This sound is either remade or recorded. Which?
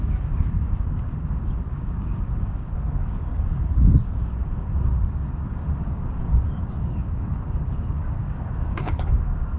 remade